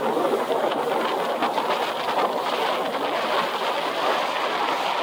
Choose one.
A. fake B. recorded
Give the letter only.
B